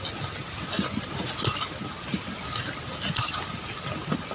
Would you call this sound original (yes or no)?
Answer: yes